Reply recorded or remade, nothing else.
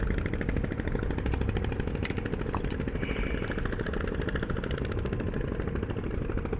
recorded